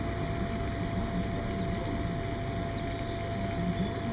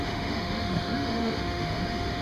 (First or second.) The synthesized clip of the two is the second